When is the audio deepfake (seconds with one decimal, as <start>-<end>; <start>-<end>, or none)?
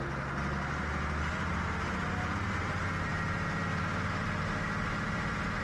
3.1-4.4